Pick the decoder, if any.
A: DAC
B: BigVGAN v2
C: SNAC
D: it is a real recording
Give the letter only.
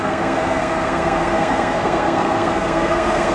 C